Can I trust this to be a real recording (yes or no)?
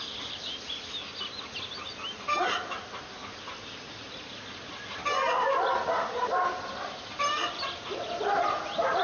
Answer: yes